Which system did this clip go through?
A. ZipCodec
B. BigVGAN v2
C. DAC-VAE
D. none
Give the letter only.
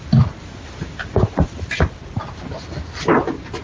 D